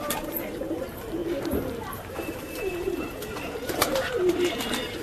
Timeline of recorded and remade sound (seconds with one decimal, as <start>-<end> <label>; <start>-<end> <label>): 0.0-5.0 remade